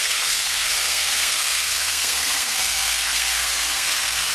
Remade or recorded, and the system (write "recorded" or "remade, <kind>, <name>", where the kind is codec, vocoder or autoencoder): remade, codec, SNAC